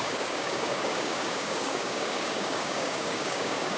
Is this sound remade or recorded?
remade